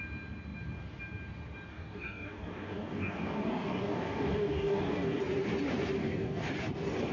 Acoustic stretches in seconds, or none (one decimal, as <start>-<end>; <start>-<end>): 0.0-1.7; 5.2-6.0; 6.5-7.1